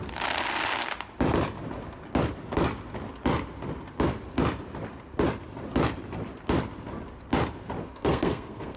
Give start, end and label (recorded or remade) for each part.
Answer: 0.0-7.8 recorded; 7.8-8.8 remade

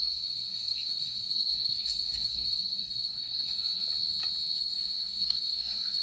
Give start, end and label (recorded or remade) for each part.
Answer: 0.0-3.8 remade; 3.8-4.6 recorded; 4.6-6.0 remade

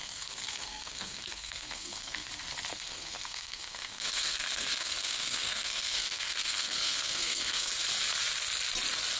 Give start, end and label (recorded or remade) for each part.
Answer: 0.0-2.3 remade; 2.3-2.7 recorded; 2.7-7.7 remade; 7.7-9.2 recorded

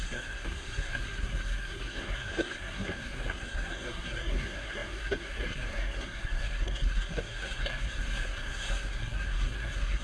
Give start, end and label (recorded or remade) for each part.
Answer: 0.0-10.0 remade

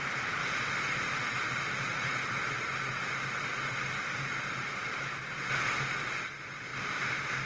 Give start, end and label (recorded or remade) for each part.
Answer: 0.0-7.5 recorded

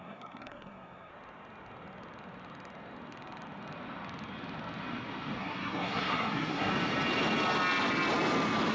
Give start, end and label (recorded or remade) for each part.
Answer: 0.0-1.1 remade; 1.1-5.4 recorded; 5.4-6.7 remade; 6.7-8.7 recorded